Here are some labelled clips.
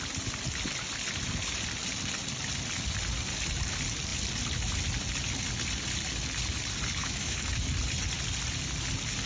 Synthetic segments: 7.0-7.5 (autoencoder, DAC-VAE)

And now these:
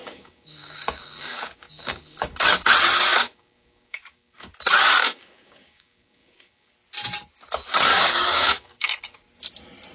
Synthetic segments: 0.0-2.4 (codec, DAC); 3.1-4.5; 5.0-6.7; 7.9-9.2

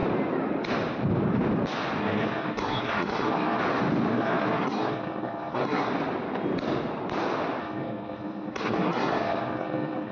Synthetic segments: 2.0-3.6 (codec, SNAC); 4.1-5.9; 7.6-10.1

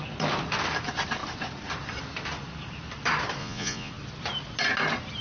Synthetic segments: 3.4-3.9 (vocoder, Vocos)

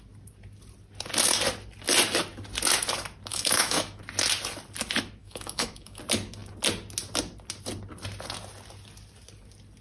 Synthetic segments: 3.3-4.0 (autoencoder, DAC-VAE); 5.2-6.0